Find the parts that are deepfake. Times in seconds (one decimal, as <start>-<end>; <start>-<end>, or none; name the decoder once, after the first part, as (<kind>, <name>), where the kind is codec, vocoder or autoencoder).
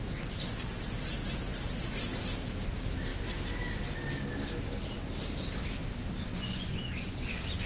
6.3-7.3 (vocoder, Vocos)